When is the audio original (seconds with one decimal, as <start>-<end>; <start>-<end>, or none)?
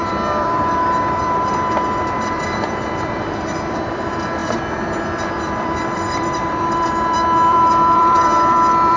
none